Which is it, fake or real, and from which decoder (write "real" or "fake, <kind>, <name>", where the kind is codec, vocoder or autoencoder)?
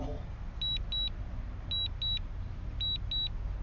real